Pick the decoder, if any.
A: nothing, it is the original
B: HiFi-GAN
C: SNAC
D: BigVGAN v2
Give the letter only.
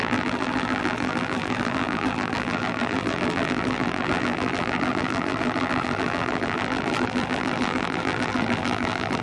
D